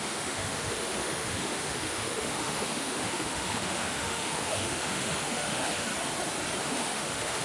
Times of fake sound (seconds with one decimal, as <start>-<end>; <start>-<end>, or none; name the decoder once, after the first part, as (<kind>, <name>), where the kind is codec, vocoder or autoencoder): 0.0-5.9 (autoencoder, DAC-VAE); 6.6-7.4